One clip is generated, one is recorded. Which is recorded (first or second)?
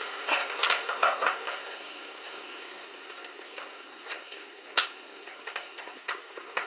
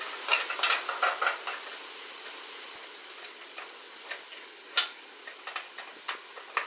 second